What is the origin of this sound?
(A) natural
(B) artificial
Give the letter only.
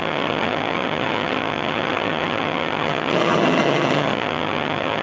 B